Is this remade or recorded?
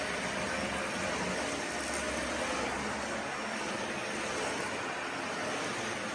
recorded